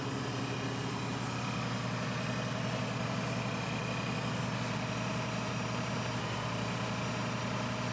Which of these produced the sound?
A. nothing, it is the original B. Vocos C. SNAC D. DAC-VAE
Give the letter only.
A